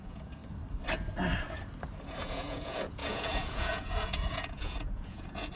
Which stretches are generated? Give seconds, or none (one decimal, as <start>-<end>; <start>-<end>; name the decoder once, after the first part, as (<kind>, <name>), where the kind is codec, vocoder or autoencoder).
0.0-0.4 (vocoder, Vocos); 2.2-5.6